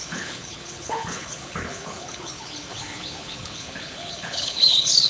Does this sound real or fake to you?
fake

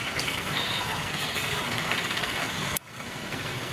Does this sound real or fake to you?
fake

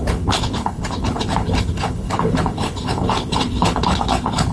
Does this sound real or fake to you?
fake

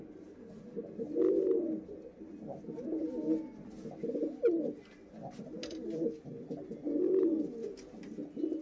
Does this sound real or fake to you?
real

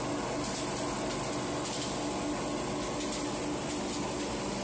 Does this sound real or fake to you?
real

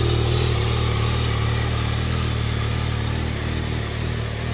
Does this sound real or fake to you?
real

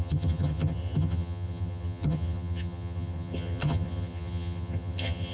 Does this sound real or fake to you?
fake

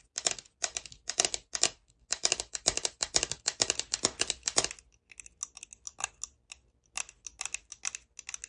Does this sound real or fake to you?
real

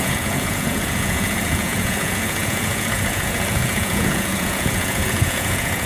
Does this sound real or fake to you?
fake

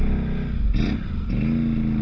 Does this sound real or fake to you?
real